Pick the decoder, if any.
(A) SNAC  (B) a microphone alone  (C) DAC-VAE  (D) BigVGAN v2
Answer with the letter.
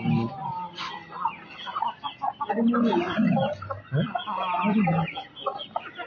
B